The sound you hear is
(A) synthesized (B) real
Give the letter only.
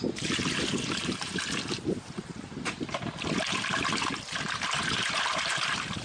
A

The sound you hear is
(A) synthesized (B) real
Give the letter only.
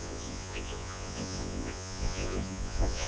A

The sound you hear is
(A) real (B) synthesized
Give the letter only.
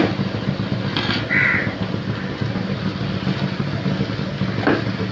A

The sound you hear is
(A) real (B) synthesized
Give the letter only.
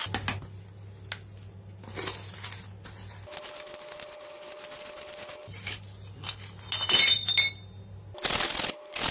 A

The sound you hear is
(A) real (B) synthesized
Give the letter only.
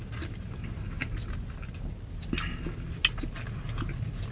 A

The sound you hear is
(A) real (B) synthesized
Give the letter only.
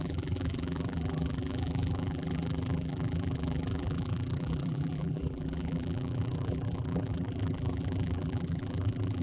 B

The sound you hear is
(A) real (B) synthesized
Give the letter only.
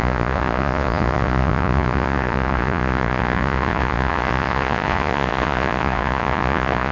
B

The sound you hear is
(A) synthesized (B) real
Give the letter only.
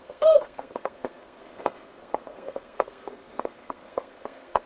A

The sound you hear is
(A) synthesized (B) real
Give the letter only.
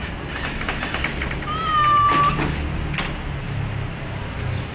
B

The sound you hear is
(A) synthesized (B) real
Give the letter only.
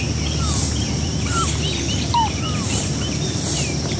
A